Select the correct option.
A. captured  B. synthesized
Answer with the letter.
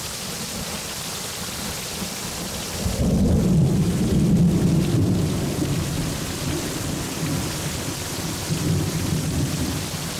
A